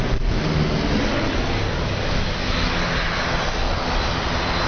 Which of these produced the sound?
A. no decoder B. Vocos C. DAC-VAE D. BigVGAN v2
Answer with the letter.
A